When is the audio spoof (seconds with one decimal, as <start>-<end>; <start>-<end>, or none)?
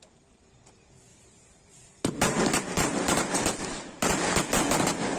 1.1-4.2